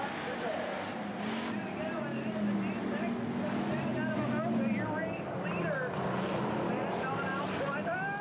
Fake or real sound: real